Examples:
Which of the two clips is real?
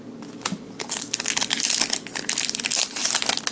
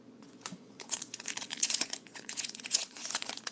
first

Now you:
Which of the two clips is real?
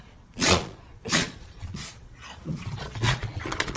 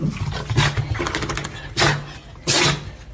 second